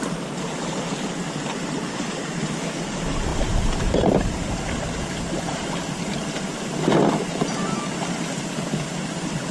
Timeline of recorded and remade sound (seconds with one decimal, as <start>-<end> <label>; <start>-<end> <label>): 0.0-9.5 recorded